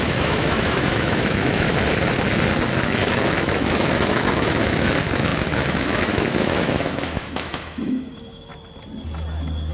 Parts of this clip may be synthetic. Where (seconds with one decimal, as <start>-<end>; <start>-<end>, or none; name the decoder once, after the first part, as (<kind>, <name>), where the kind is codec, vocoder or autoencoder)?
0.0-1.7 (autoencoder, DAC-VAE); 3.1-8.5